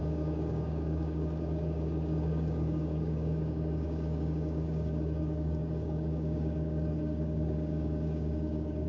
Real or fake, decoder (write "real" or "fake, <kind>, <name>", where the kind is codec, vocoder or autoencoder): fake, codec, DAC